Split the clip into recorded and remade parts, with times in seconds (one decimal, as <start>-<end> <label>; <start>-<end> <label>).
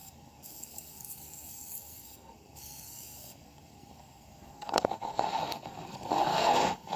0.0-7.0 remade